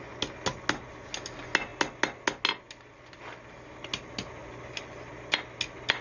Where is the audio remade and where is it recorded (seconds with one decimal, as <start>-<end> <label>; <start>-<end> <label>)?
0.0-6.0 recorded